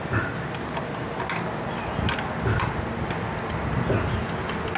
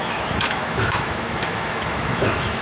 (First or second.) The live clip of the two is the first